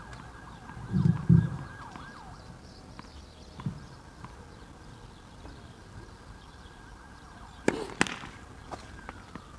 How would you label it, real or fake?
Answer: real